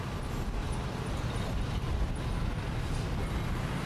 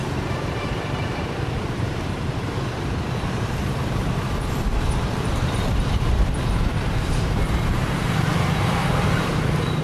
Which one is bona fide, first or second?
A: first